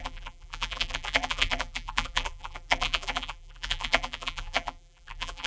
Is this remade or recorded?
remade